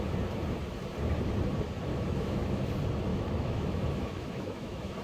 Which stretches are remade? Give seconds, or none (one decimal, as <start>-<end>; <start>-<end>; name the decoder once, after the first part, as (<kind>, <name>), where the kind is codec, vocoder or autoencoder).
1.9-2.6 (autoencoder, DAC-VAE); 3.1-5.0